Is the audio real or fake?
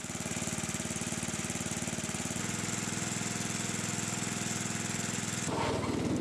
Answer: real